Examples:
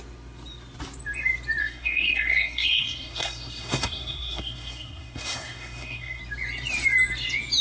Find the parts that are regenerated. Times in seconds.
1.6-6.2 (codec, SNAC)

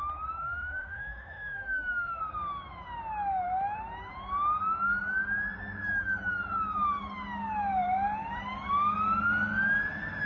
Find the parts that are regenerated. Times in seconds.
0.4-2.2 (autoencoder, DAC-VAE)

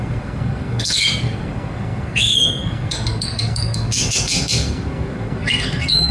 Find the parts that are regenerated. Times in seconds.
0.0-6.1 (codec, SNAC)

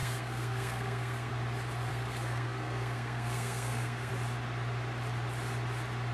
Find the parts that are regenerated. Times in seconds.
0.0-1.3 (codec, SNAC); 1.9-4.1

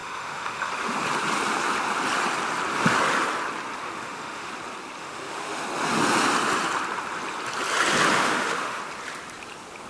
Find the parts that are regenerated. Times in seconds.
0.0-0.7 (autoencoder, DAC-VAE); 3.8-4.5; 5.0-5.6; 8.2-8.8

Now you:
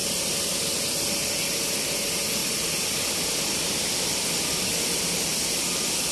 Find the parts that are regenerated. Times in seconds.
0.0-0.6 (vocoder, BigVGAN v2); 1.2-1.8; 2.4-4.6

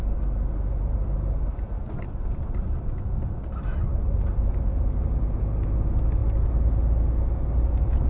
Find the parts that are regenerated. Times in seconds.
none

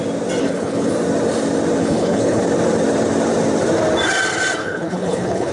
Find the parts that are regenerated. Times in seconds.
0.4-0.9 (codec, HILCodec); 1.8-2.4; 4.6-5.5